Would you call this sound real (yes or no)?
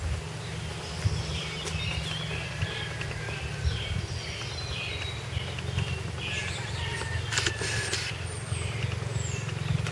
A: yes